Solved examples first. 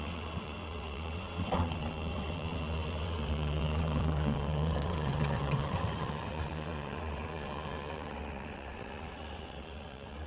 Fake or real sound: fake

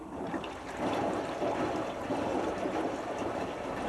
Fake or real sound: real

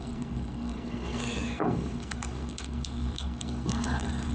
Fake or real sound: fake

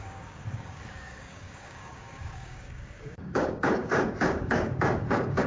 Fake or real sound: fake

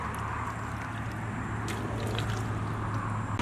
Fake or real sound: real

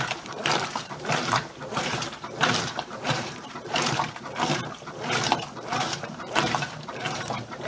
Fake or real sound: fake